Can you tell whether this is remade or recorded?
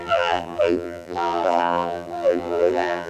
remade